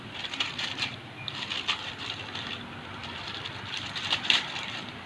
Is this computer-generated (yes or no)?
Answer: yes